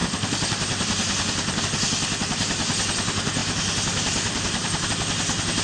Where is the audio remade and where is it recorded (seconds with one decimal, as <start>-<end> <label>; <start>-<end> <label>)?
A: 0.0-1.6 remade; 1.6-3.4 recorded; 3.4-4.9 remade; 4.9-5.6 recorded